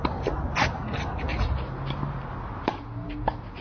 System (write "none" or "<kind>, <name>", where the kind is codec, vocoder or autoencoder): none